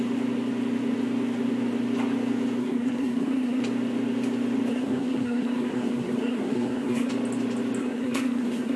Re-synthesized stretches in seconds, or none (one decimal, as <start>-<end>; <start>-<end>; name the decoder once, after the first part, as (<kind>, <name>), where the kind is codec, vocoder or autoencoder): 2.6-3.6 (codec, SNAC); 4.7-7.1; 7.8-8.8